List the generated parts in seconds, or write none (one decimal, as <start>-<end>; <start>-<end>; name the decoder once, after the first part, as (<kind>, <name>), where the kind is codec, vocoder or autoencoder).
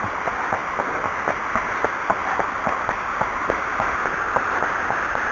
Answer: none